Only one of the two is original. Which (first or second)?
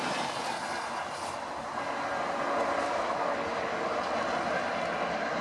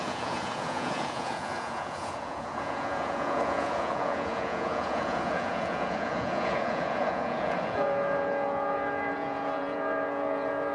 first